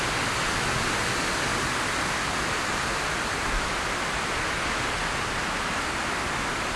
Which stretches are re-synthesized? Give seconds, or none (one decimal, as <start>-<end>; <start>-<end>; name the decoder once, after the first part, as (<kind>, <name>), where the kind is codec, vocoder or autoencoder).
none